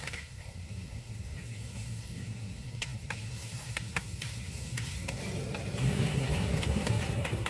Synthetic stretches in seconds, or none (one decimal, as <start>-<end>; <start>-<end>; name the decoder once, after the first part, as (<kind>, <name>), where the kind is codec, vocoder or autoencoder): 0.0-5.2 (codec, SNAC); 5.8-7.5